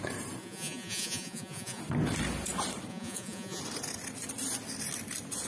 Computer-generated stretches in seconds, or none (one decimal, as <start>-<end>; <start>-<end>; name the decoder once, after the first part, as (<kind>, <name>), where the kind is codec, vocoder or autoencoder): 0.4-1.8 (vocoder, Vocos); 2.9-3.6

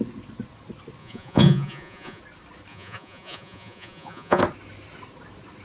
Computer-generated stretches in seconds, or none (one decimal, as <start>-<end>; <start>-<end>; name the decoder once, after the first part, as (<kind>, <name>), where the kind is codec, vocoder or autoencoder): 1.0-2.2 (vocoder, Vocos); 2.7-4.4

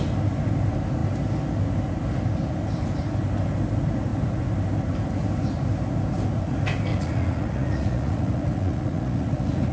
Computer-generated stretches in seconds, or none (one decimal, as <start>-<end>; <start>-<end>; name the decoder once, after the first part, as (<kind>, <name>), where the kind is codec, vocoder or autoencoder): 6.9-9.7 (vocoder, Vocos)

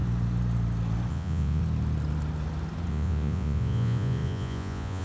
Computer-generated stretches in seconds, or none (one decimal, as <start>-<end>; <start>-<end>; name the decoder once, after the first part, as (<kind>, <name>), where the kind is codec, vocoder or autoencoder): 1.1-1.6 (vocoder, Vocos); 2.9-5.0

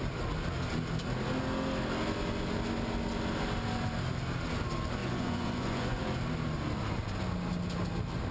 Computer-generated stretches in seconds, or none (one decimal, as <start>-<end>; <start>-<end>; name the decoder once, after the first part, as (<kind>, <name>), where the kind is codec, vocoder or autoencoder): 5.0-6.0 (vocoder, Vocos)

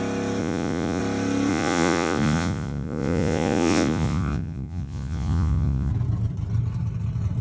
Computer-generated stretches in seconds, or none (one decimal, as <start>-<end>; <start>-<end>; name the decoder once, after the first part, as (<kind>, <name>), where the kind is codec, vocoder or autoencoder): 0.4-1.0 (vocoder, Vocos); 1.5-5.9

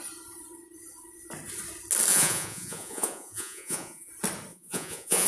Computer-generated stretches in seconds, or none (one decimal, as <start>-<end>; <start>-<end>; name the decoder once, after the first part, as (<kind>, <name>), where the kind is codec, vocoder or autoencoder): 2.1-4.1 (vocoder, Vocos); 4.5-5.3

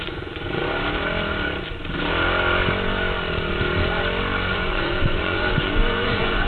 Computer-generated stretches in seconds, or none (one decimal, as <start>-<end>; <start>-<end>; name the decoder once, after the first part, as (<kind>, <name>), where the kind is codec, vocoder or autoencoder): 0.0-0.6 (vocoder, Vocos); 4.5-6.5